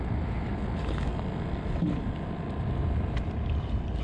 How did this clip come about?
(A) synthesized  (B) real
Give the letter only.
B